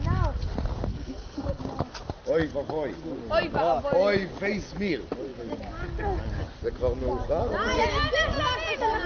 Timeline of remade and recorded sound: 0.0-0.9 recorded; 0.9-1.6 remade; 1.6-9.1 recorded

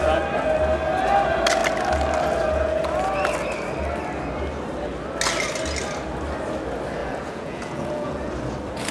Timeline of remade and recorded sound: 0.0-7.0 recorded; 7.0-8.3 remade; 8.3-8.9 recorded

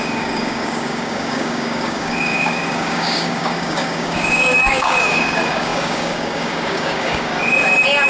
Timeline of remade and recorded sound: 0.0-7.3 remade; 7.3-8.1 recorded

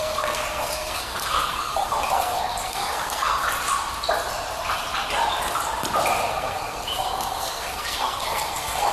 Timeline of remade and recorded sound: 0.0-3.4 remade; 3.4-6.3 recorded; 6.3-8.9 remade

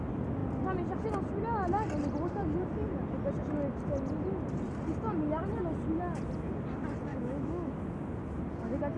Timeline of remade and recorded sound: 0.0-7.1 recorded; 7.1-7.8 remade; 7.8-9.0 recorded